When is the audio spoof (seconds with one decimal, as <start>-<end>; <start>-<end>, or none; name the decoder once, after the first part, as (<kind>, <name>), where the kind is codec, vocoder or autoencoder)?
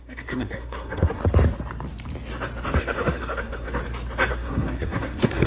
0.0-1.2 (codec, SNAC); 2.8-3.8; 4.3-5.5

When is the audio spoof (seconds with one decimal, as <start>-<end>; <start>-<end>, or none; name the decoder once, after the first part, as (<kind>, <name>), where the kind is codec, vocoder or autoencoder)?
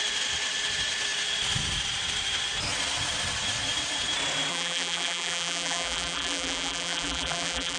4.5-7.8 (vocoder, BigVGAN v2)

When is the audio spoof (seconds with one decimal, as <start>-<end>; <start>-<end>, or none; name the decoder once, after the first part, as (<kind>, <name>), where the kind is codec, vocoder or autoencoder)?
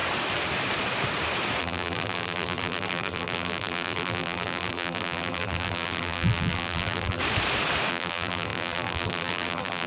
1.6-7.2 (vocoder, BigVGAN v2); 7.9-9.9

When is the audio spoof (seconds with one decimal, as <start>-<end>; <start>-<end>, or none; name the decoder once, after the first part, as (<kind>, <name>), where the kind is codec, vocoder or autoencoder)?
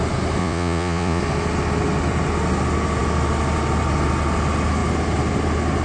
0.4-1.2 (vocoder, Vocos)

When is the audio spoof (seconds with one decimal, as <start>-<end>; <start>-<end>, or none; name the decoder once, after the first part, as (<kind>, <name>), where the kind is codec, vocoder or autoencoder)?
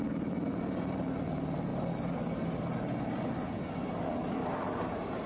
1.7-3.3 (vocoder, BigVGAN v2); 4.4-5.3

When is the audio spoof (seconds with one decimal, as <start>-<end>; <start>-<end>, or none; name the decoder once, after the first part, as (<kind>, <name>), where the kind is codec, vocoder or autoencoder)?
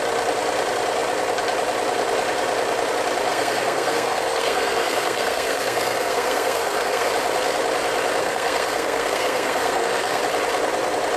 3.3-7.1 (codec, SNAC); 8.2-10.2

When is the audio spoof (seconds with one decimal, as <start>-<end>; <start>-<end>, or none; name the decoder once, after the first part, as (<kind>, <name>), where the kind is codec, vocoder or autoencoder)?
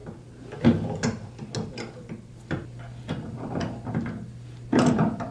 1.7-5.3 (vocoder, BigVGAN v2)